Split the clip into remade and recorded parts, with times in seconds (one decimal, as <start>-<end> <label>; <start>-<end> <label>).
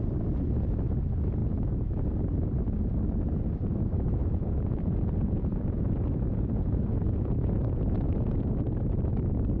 0.0-1.4 recorded; 1.4-2.1 remade; 2.1-4.2 recorded; 4.2-8.5 remade; 8.5-9.6 recorded